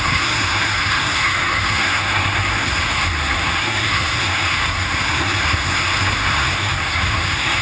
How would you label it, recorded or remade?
remade